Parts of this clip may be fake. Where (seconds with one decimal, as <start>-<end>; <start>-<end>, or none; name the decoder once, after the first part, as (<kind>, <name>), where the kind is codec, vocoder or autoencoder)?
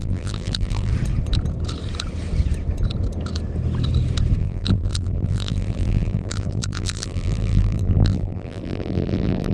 0.0-0.9 (vocoder, BigVGAN v2); 4.4-9.5